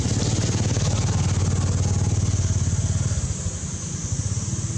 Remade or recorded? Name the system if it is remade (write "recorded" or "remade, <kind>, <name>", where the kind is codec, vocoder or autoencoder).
recorded